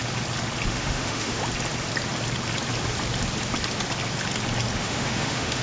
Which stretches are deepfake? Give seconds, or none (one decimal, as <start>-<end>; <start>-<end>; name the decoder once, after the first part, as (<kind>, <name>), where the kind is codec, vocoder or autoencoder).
0.7-1.4 (autoencoder, DAC-VAE); 4.8-5.6